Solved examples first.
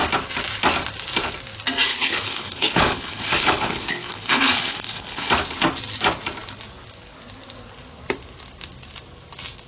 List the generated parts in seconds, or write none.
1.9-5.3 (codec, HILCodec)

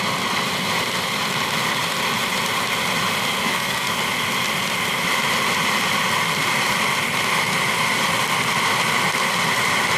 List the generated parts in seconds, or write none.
3.4-3.9 (codec, SNAC)

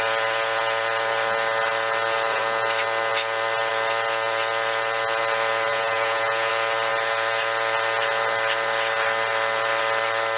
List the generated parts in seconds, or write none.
5.7-6.5 (vocoder, Vocos)

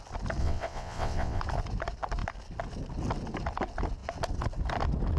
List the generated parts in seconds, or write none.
0.4-1.4 (vocoder, WaveNeXt)

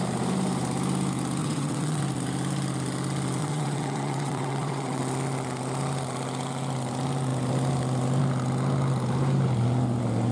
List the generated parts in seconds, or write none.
1.4-2.0 (vocoder, WaveNeXt); 3.4-5.0